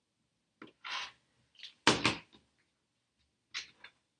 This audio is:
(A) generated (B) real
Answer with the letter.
B